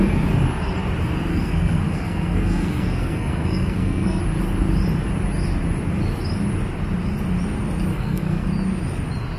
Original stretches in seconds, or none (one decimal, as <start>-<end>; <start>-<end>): 0.0-1.3; 4.2-7.9; 8.5-9.4